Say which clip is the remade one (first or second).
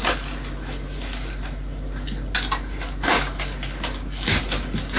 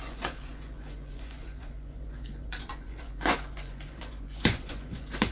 second